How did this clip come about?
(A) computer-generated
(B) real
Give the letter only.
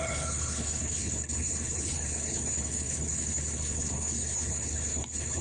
A